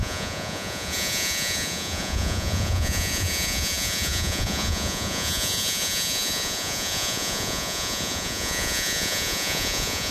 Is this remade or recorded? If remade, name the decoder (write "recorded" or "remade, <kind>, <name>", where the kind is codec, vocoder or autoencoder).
remade, vocoder, Vocos